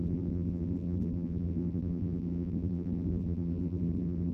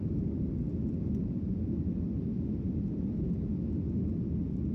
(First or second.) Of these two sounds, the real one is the second